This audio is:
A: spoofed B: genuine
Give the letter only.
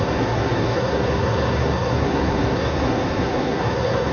A